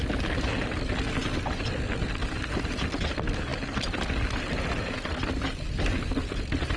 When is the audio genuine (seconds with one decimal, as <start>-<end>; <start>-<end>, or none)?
0.0-6.8